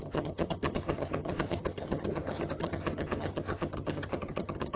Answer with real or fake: fake